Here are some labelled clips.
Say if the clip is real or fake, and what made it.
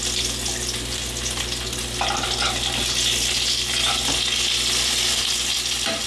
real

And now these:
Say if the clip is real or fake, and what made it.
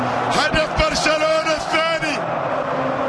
real